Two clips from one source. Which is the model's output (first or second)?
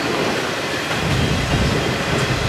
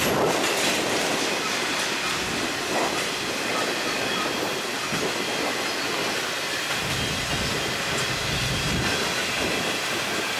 first